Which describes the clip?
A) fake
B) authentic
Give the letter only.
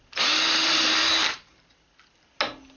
B